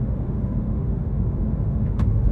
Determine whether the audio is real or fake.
fake